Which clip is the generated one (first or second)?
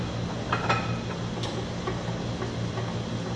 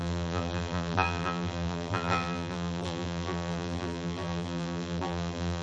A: second